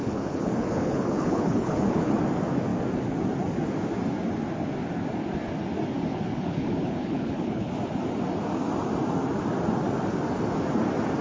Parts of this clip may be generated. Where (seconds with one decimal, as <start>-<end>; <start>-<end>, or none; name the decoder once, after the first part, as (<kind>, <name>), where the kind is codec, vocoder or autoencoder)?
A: 0.0-2.1 (codec, HILCodec); 6.1-7.7